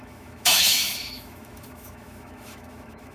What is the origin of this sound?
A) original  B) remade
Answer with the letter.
B